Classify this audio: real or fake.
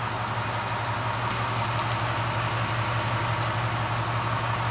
real